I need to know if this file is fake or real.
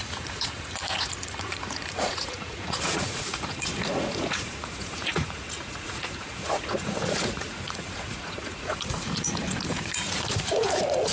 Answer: fake